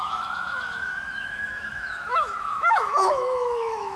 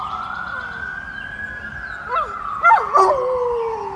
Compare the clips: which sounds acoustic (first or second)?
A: second